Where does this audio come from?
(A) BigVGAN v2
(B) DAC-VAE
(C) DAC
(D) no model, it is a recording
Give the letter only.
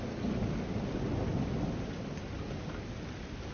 D